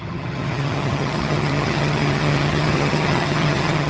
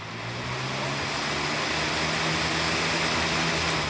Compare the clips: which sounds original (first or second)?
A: second